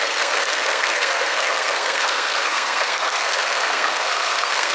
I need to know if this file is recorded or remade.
remade